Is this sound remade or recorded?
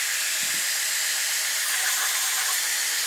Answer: recorded